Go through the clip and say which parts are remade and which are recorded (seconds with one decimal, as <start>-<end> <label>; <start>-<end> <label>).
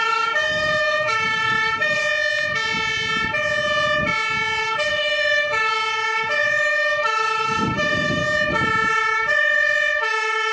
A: 0.0-2.0 remade; 2.0-4.6 recorded; 4.6-8.2 remade; 8.2-8.9 recorded; 8.9-10.5 remade